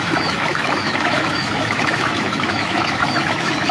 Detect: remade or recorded remade